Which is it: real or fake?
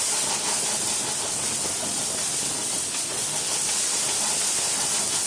real